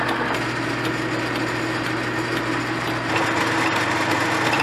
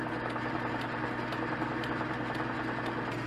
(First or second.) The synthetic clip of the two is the second